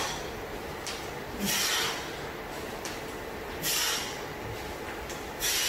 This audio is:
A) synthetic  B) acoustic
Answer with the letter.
B